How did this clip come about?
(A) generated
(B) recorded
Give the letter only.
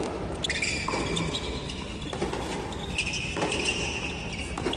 B